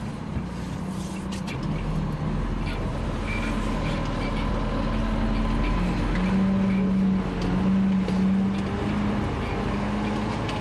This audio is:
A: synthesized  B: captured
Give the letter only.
B